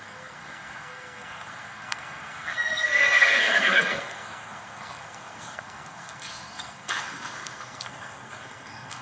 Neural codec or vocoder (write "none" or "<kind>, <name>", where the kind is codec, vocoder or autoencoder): codec, SNAC